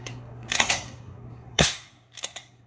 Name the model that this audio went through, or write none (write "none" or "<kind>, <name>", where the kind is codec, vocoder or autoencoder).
codec, SNAC